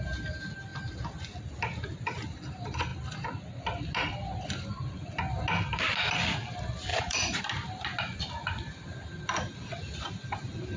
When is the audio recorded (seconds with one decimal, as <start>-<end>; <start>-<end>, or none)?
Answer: 0.0-6.9; 7.4-10.8